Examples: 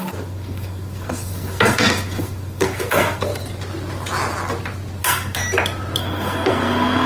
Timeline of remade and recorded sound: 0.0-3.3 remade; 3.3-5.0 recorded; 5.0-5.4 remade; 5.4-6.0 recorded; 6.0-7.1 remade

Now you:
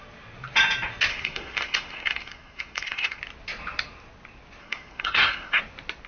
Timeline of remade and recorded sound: 0.0-1.1 recorded; 1.1-3.2 remade; 3.2-4.6 recorded; 4.6-5.6 remade; 5.6-6.1 recorded

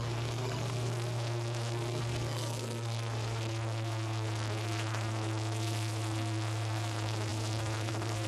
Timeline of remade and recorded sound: 0.0-8.3 remade

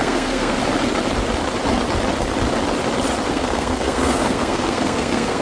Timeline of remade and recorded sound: 0.0-0.6 remade; 0.6-3.3 recorded; 3.3-5.4 remade